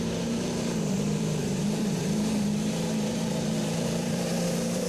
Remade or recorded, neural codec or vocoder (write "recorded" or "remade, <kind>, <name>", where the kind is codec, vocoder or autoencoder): remade, vocoder, BigVGAN v2